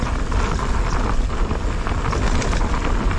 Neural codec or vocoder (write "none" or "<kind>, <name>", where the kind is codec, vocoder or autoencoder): none